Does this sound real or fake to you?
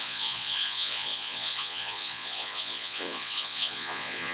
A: fake